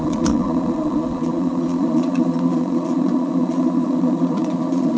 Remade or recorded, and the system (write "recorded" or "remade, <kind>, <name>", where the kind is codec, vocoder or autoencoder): remade, vocoder, Vocos